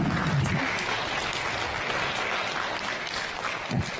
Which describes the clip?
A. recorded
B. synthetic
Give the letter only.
A